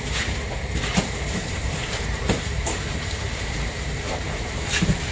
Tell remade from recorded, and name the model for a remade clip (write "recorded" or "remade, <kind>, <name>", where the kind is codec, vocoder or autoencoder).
remade, vocoder, BigVGAN v2